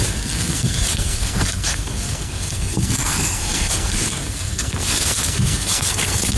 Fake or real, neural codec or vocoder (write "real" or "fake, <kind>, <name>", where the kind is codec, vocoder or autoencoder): fake, codec, SNAC